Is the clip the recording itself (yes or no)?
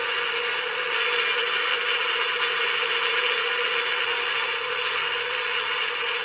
yes